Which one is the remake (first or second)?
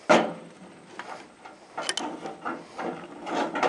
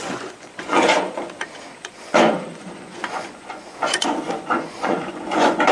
second